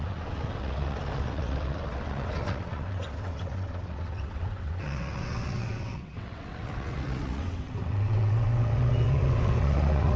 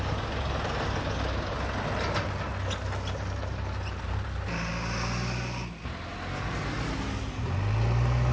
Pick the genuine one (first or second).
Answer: second